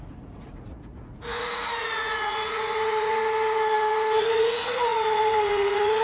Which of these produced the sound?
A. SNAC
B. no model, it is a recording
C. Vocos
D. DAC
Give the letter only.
C